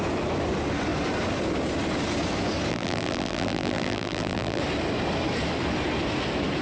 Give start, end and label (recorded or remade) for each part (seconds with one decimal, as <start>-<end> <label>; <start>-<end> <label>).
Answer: 0.0-2.7 recorded; 2.7-4.6 remade; 4.6-6.6 recorded